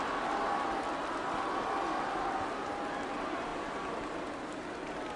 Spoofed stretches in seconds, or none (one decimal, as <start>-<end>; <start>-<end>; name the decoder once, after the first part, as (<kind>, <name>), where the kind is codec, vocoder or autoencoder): none